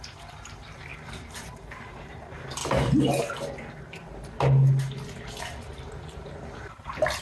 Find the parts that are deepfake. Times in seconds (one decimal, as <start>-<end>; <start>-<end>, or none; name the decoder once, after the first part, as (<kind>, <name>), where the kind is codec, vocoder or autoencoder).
0.0-2.6 (vocoder, BigVGAN v2); 5.4-7.2